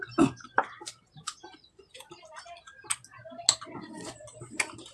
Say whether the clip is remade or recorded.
recorded